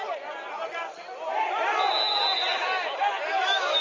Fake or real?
real